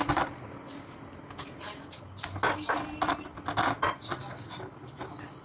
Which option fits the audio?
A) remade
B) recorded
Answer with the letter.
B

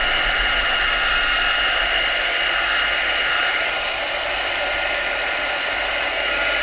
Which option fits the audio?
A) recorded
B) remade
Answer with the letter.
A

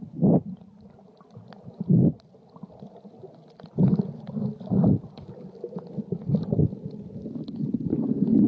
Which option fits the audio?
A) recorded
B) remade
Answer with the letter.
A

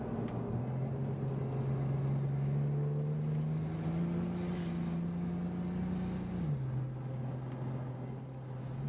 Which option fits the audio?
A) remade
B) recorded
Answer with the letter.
B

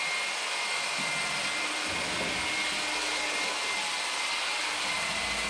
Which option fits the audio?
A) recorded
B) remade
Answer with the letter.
A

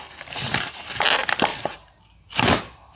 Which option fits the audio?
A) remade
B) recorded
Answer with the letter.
B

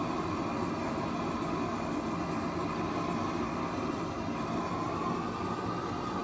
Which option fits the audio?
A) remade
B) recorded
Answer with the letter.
B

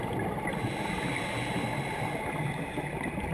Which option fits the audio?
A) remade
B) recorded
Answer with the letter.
B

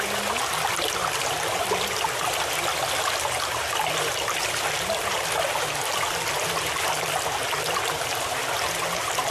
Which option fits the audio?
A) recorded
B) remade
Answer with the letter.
A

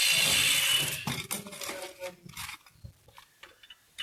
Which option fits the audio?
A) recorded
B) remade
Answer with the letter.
A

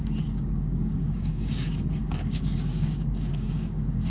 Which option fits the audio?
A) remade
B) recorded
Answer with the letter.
A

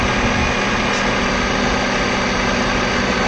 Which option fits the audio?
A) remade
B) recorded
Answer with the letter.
B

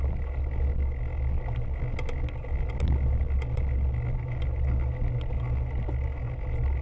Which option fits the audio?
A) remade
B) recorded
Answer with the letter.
B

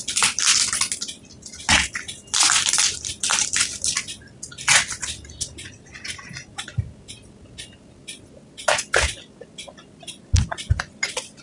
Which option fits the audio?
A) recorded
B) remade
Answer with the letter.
A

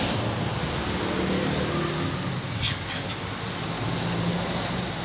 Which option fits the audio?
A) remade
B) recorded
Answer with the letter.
B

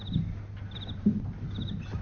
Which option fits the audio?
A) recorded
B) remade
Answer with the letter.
A